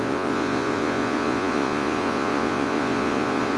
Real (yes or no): no